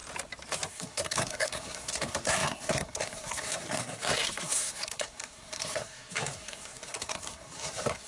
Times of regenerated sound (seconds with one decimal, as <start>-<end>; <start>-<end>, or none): 0.7-8.1